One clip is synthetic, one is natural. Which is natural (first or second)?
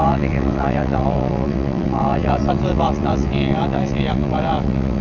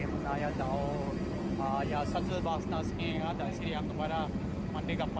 second